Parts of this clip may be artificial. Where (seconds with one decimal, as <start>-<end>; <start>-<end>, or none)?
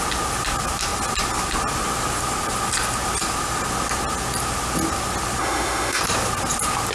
5.4-6.0